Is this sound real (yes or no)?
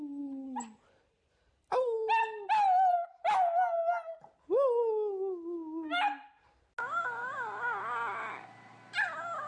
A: yes